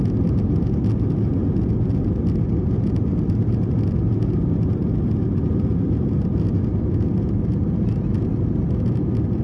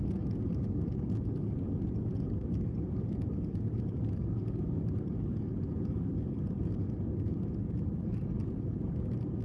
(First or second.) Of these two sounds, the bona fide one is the first